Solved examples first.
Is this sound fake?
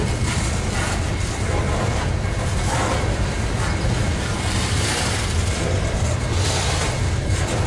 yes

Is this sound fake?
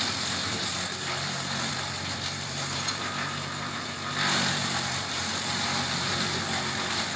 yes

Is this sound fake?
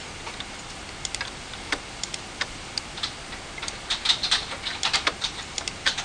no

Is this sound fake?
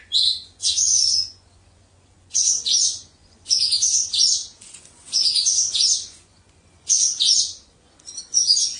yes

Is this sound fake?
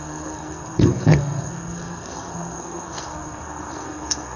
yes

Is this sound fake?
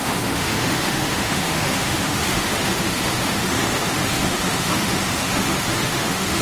yes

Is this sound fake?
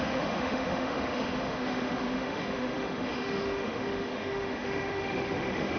yes